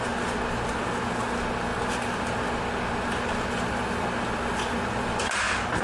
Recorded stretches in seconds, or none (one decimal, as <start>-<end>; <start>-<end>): 0.0-5.8